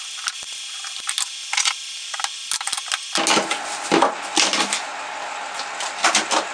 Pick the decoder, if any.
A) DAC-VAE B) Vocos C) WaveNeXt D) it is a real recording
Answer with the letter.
D